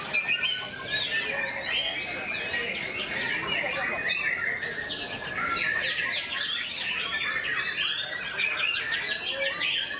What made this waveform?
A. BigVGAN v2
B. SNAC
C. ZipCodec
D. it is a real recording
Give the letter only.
D